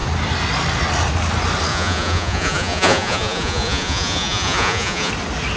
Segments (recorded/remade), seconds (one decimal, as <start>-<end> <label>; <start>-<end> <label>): 0.0-1.7 recorded; 1.7-5.1 remade; 5.1-5.6 recorded